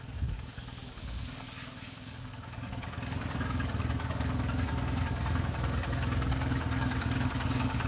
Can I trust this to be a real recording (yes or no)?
no